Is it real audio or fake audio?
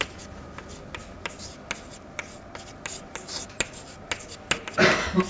real